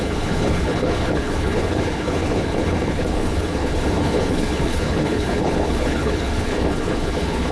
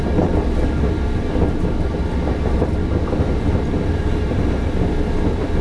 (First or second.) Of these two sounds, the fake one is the first